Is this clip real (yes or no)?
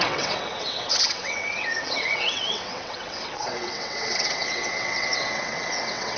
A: no